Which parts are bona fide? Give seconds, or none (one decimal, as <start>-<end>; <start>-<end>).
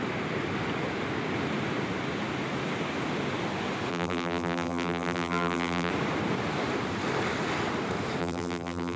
0.0-3.9; 5.9-8.2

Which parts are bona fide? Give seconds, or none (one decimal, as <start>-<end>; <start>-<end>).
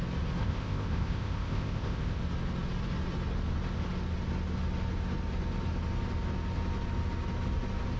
0.0-0.4; 2.2-8.0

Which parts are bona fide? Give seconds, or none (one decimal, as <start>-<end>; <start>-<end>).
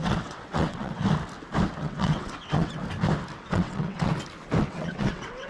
1.0-1.8; 2.8-3.4; 4.1-4.6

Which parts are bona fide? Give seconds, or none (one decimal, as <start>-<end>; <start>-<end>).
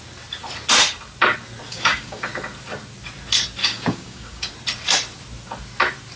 0.0-1.7; 2.3-3.6; 4.5-6.2